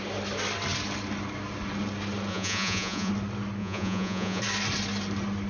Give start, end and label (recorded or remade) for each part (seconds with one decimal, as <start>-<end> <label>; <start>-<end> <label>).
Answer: 0.0-2.3 recorded; 2.3-3.1 remade; 3.1-3.6 recorded; 3.6-4.4 remade; 4.4-5.5 recorded